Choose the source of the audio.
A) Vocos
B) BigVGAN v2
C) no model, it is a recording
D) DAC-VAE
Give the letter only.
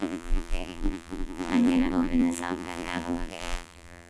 B